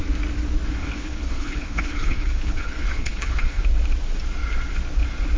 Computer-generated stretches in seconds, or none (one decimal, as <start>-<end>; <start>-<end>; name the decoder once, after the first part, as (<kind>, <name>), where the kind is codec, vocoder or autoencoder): 0.8-3.6 (codec, HILCodec)